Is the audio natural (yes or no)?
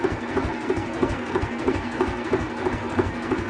no